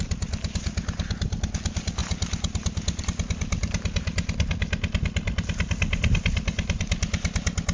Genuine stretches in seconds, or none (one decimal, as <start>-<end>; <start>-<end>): 0.0-7.7

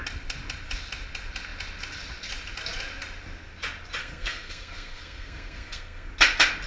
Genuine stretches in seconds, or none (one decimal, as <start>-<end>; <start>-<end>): 0.0-4.0; 6.1-6.7

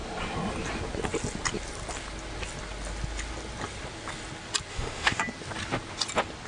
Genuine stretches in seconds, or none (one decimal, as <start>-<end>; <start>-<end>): 0.0-4.7; 5.2-6.5

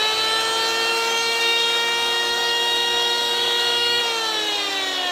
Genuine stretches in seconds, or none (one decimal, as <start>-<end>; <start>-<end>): 0.0-0.9; 4.0-5.1

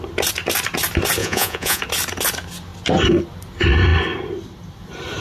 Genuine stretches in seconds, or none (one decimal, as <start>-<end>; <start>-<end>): 0.0-1.2; 1.8-5.2